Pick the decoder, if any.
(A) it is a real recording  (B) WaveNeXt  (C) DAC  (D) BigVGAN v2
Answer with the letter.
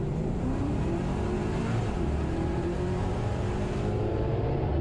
D